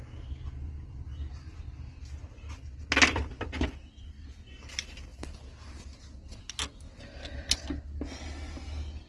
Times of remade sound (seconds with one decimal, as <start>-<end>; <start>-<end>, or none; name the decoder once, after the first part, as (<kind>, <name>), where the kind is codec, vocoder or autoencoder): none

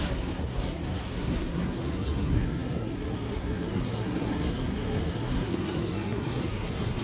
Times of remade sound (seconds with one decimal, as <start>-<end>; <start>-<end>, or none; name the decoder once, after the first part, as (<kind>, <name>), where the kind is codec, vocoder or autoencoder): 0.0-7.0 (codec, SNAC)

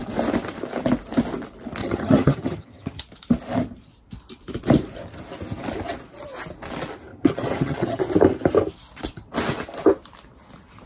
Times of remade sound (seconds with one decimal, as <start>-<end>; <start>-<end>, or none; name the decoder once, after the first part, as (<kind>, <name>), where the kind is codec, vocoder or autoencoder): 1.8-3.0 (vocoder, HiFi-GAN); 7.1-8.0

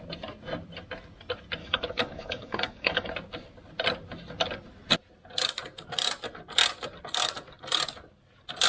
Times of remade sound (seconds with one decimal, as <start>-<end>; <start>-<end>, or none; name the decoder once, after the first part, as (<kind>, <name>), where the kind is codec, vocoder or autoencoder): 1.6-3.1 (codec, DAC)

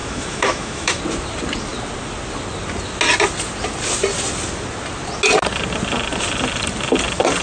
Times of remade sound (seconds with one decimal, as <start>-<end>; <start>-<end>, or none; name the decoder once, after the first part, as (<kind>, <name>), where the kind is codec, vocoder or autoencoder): 0.0-1.0 (autoencoder, DAC-VAE)

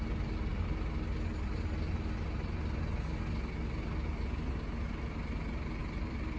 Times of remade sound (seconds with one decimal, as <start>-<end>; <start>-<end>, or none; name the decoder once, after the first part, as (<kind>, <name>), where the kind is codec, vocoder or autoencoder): 5.8-6.4 (vocoder, BigVGAN v2)